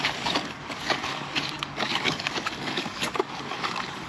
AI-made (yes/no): yes